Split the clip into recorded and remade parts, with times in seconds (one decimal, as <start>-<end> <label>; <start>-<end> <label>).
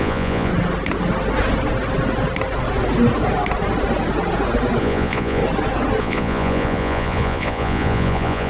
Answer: 0.0-0.5 remade; 0.5-4.8 recorded; 4.8-5.4 remade; 5.4-6.0 recorded; 6.0-8.5 remade